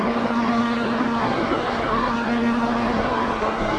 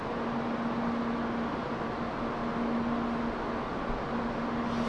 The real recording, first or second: second